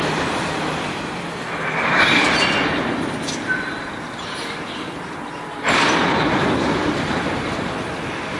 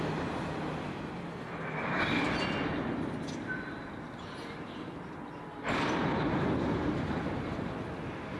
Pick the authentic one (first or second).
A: second